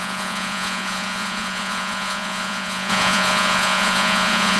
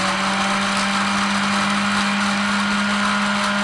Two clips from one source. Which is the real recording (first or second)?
second